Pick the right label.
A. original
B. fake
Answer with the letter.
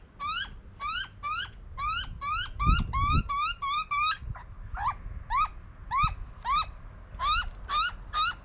A